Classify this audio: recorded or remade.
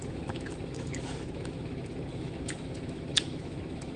remade